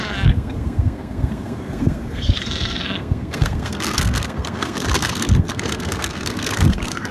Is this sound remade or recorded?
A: remade